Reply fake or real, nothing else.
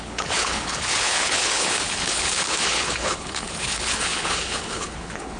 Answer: fake